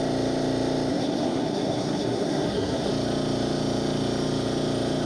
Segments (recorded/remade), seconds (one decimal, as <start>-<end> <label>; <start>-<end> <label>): 0.0-0.9 recorded; 0.9-2.9 remade; 2.9-5.1 recorded